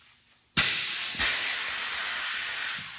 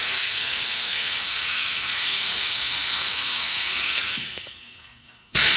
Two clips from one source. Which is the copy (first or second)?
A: second